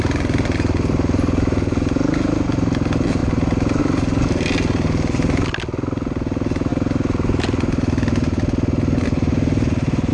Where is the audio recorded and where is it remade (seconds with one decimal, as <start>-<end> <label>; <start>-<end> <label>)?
0.0-10.1 recorded